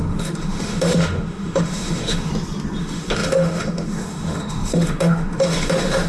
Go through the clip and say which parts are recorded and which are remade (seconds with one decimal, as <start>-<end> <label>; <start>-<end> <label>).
0.0-2.3 remade; 2.3-2.8 recorded; 2.8-6.1 remade